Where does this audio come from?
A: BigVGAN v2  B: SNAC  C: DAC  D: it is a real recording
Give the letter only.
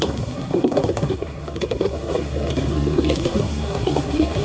B